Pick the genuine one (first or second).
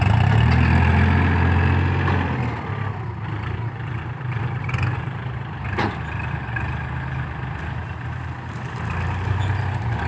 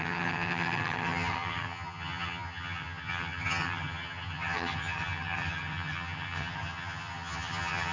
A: first